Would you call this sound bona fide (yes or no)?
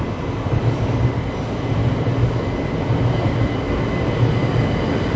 yes